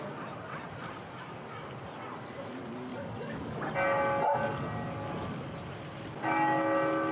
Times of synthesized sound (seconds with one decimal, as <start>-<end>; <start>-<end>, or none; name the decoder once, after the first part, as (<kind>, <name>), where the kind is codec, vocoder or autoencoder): 2.9-3.5 (codec, DAC)